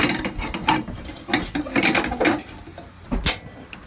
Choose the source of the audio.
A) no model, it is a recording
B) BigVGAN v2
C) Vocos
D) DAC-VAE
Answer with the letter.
A